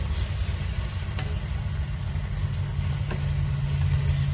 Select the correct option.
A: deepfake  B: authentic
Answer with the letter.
B